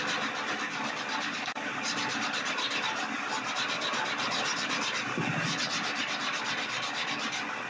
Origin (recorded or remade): recorded